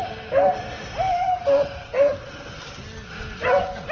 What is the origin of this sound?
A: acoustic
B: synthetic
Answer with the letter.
A